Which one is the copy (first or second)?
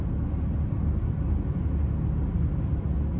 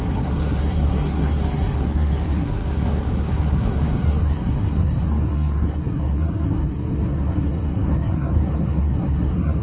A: second